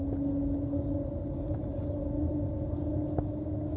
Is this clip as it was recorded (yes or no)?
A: yes